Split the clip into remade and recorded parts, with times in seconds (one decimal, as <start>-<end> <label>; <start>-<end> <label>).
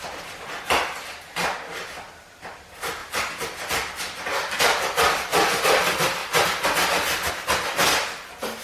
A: 0.0-8.6 recorded